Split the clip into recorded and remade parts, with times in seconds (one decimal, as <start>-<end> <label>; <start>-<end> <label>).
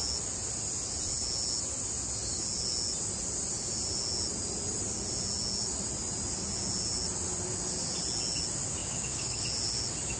0.0-8.8 recorded; 8.8-9.4 remade; 9.4-10.2 recorded